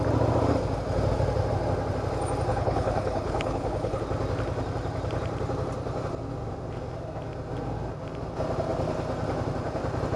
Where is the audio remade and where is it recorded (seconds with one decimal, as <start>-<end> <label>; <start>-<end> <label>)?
0.0-2.5 recorded; 2.5-4.0 remade; 4.0-10.2 recorded